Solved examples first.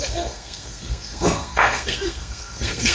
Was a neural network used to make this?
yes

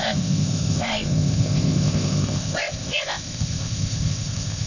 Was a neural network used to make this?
yes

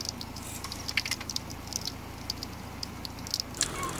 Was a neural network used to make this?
no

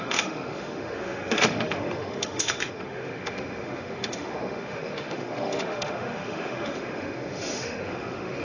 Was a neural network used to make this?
yes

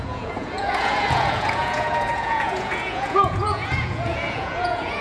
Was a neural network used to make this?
yes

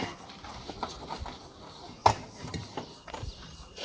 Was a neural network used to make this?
no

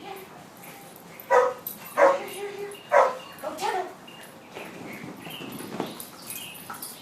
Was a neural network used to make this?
no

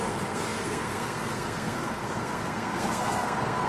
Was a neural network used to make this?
yes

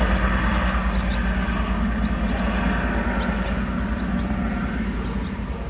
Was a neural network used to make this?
no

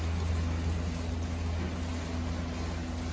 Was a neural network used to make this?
no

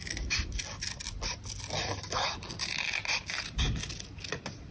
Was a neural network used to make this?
no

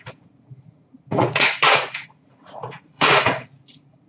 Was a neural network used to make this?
yes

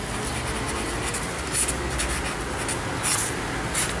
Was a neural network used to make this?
no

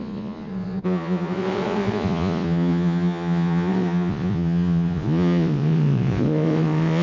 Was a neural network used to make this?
yes